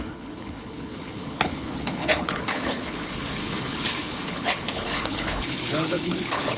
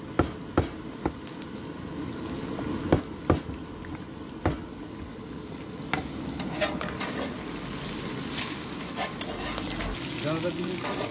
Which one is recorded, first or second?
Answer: second